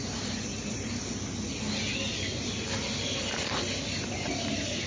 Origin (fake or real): real